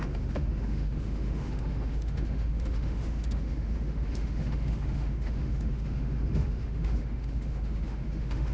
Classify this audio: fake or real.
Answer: fake